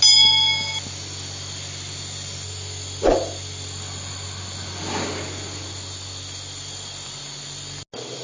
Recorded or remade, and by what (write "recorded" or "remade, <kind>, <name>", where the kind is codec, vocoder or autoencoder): recorded